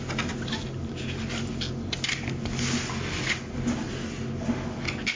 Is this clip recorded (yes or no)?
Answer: yes